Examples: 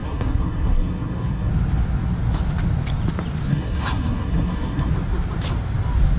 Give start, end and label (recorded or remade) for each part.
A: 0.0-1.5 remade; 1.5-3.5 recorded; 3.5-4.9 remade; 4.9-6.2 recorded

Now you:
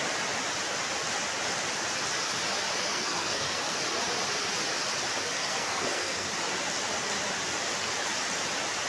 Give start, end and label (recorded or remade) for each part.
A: 0.0-2.8 recorded; 2.8-3.8 remade; 3.8-5.2 recorded; 5.2-6.3 remade; 6.3-8.9 recorded

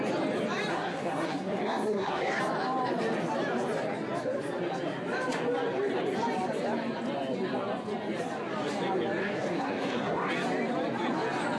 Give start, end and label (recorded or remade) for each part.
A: 0.0-0.7 recorded; 0.7-2.4 remade; 2.4-9.2 recorded; 9.2-10.3 remade; 10.3-11.6 recorded

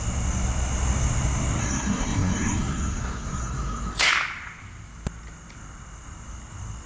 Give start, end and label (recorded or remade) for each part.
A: 0.0-1.6 recorded; 1.6-4.1 remade; 4.1-6.9 recorded